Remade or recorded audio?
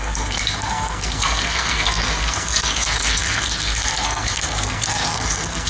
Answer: remade